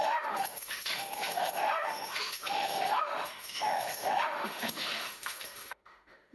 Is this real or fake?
fake